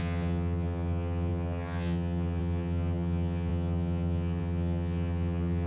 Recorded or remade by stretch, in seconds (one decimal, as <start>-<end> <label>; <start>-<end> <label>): 0.0-5.7 remade